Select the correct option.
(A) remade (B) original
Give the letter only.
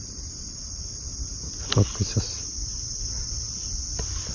A